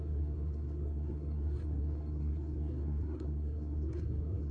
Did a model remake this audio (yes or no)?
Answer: yes